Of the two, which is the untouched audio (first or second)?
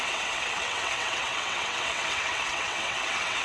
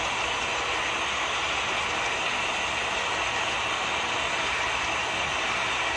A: second